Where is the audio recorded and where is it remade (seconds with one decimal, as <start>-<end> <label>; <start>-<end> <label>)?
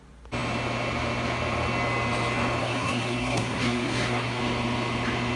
0.0-2.6 recorded; 2.6-4.4 remade; 4.4-5.4 recorded